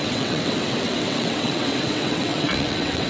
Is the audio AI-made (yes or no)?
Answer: yes